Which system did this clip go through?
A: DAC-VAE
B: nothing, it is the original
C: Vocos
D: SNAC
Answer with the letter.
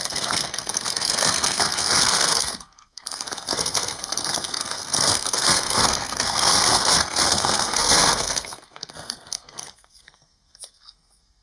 D